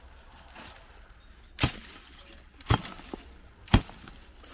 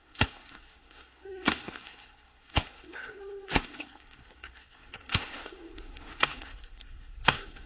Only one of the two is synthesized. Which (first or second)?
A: second